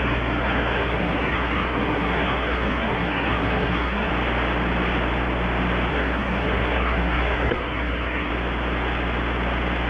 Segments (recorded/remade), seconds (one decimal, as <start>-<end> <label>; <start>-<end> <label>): 0.0-4.1 remade; 4.1-5.9 recorded; 5.9-8.3 remade; 8.3-9.9 recorded